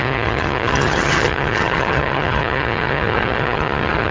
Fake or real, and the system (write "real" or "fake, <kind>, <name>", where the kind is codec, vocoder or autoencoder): fake, vocoder, HiFi-GAN